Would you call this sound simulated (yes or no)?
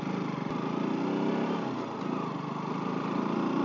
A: no